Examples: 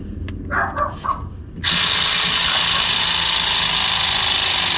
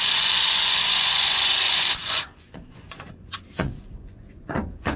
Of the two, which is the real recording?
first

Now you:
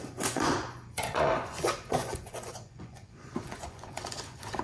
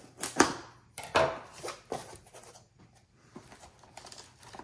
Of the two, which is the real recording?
second